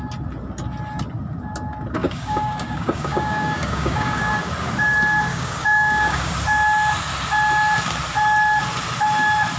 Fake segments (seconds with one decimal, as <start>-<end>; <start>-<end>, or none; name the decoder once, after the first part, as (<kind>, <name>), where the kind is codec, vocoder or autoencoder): 2.0-4.3 (codec, DAC); 5.3-6.3